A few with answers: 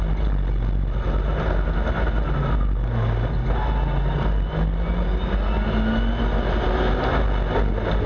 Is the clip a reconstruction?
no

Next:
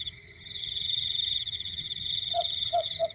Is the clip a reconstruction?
yes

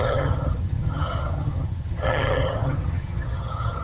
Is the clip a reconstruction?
yes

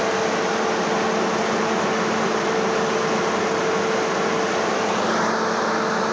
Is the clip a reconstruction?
no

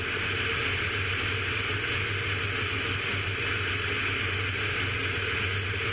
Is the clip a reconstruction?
no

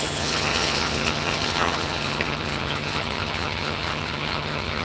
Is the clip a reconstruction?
yes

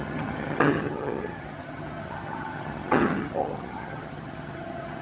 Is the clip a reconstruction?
yes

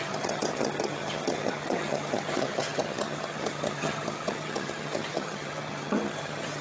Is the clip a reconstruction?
yes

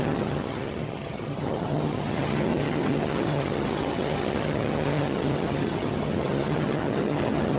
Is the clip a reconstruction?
yes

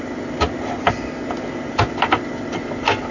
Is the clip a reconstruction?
no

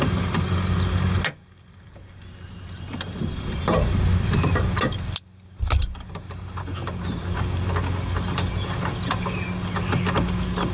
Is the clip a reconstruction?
no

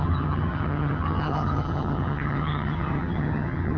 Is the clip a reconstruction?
yes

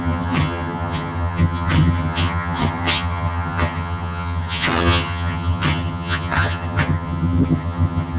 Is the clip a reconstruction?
yes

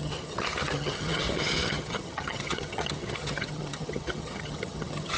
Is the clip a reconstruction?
yes